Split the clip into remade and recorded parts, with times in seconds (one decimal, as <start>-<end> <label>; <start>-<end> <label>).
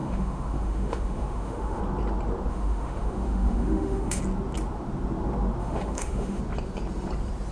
0.0-1.8 remade; 1.8-2.5 recorded; 2.5-4.2 remade; 4.2-5.6 recorded; 5.6-6.4 remade; 6.4-7.5 recorded